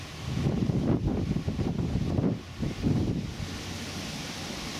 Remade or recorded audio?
recorded